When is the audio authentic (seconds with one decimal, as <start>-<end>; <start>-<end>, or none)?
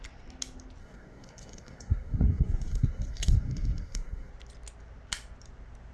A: 0.0-0.8; 4.3-5.9